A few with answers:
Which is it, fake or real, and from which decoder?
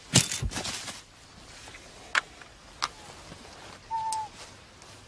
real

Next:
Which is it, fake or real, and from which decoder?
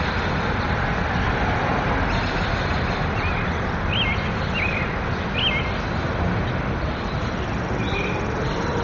real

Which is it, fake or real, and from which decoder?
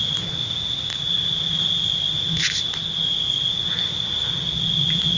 real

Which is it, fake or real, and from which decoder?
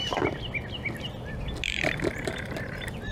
real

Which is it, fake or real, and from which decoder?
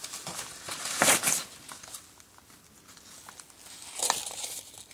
real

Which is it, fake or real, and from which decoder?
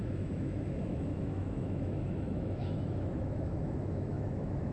fake, autoencoder, DAC-VAE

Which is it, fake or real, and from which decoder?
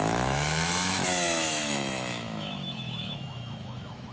fake, autoencoder, DAC-VAE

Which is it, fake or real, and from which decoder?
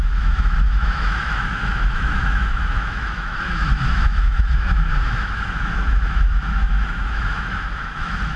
fake, autoencoder, DAC-VAE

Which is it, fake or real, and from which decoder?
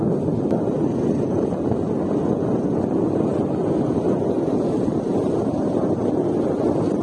real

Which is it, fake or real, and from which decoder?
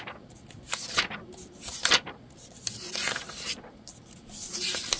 real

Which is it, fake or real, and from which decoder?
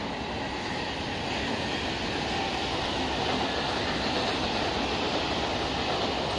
real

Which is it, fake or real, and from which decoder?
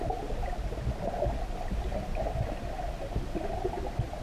real